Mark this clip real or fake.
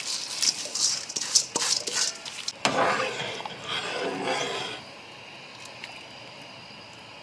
real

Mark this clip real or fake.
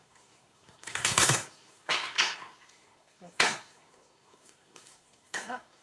fake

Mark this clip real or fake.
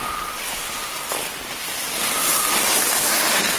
real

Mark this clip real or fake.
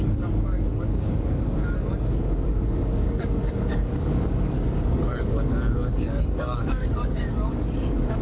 fake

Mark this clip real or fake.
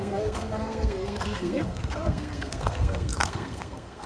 fake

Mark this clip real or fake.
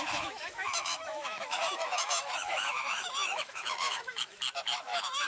fake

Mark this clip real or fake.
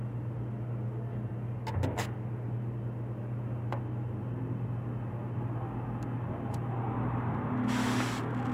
real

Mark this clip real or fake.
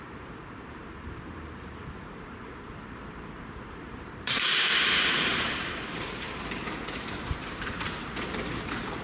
fake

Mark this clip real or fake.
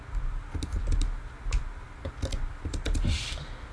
real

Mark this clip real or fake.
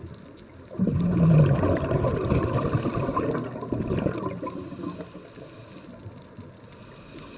real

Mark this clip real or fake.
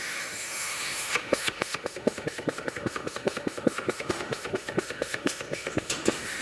fake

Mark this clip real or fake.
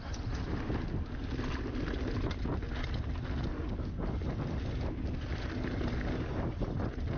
real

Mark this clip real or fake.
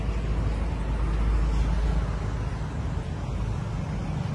real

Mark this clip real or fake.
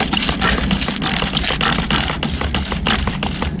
real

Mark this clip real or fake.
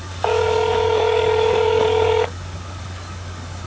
fake